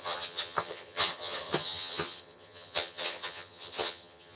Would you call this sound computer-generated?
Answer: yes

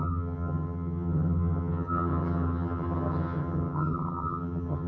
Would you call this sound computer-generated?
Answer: yes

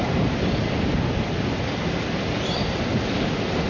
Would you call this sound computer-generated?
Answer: no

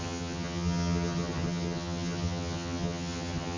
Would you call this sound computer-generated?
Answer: yes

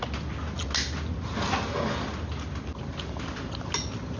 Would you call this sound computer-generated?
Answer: no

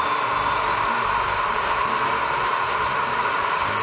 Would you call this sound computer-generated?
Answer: no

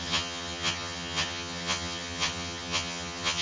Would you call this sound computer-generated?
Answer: yes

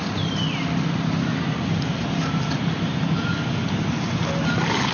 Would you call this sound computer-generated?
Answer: no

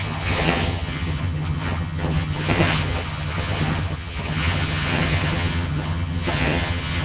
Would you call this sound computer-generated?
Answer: yes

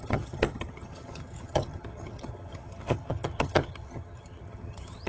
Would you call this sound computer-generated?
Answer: yes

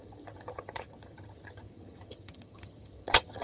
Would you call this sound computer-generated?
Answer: yes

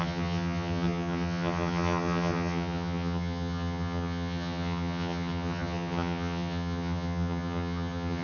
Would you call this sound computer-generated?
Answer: yes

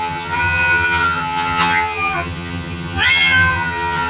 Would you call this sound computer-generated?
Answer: yes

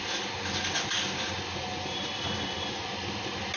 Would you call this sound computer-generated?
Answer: no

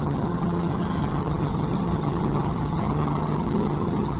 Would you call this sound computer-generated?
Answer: yes